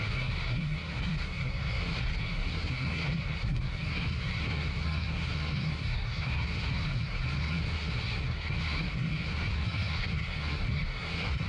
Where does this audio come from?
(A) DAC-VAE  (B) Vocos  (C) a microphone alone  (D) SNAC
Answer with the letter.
D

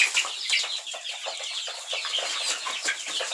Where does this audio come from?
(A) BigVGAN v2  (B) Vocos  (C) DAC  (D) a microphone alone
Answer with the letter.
D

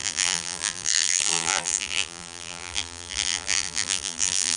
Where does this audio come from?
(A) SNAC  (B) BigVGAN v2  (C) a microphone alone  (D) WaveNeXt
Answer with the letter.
B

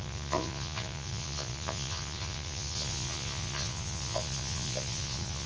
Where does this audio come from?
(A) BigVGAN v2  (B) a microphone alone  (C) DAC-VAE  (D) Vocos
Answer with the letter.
D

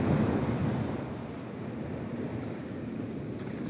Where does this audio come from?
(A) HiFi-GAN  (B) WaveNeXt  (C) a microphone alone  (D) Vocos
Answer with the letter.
C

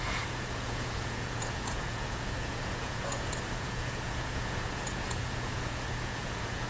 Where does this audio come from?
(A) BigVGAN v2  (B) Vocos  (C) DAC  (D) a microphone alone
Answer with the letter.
B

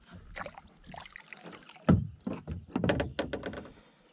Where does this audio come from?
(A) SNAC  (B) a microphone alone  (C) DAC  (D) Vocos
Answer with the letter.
B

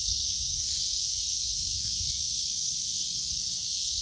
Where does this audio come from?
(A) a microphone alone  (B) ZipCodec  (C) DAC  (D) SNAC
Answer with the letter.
D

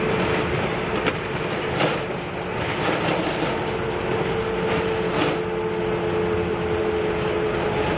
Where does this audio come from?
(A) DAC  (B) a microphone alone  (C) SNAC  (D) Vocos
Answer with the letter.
B